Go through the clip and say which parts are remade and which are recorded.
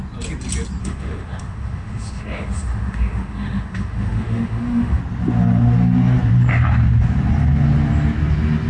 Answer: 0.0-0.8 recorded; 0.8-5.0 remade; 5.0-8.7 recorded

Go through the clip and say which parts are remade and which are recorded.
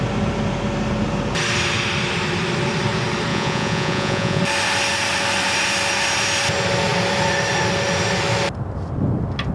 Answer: 0.0-3.3 recorded; 3.3-4.4 remade; 4.4-9.5 recorded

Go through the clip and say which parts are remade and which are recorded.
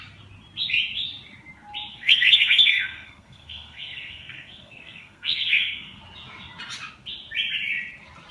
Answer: 0.0-1.9 recorded; 1.9-6.0 remade; 6.0-8.3 recorded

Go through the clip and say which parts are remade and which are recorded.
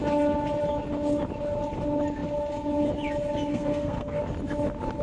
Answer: 0.0-3.5 recorded; 3.5-4.2 remade; 4.2-5.0 recorded